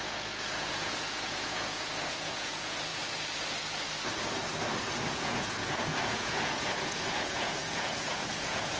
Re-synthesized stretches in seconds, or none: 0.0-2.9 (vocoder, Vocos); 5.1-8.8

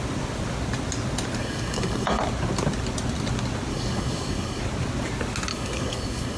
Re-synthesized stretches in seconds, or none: 1.4-2.2 (codec, DAC); 3.7-4.6; 5.5-6.4